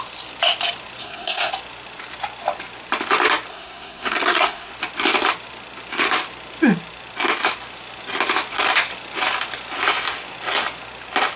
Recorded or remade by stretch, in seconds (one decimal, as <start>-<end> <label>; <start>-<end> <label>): 0.0-1.0 recorded; 1.0-1.5 remade; 1.5-3.5 recorded; 3.5-4.7 remade; 4.7-11.4 recorded